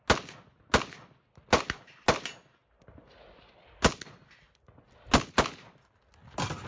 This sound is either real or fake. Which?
real